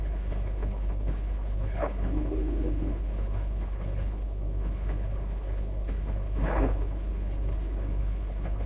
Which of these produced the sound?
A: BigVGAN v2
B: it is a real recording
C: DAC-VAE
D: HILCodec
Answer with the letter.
D